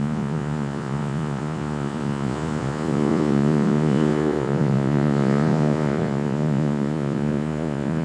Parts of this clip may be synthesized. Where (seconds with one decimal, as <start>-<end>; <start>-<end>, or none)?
0.0-8.0

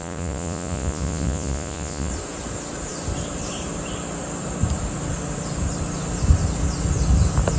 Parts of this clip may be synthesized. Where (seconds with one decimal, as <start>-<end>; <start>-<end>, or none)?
0.0-2.1

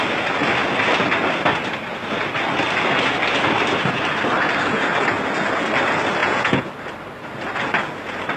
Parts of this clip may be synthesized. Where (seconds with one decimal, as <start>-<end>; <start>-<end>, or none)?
6.2-6.7

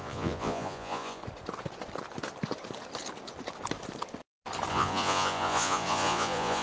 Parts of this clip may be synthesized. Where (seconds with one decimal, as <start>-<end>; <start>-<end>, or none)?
0.0-1.2; 4.7-6.6

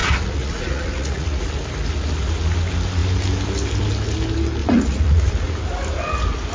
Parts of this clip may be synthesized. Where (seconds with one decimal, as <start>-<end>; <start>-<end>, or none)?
0.0-1.4; 4.6-5.3